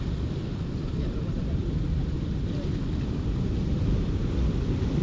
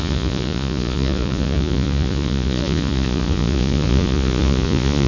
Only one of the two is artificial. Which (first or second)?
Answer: second